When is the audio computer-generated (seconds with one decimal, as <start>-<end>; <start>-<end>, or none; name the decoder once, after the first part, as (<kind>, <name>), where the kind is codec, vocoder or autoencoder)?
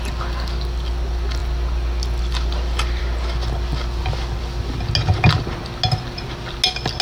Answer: none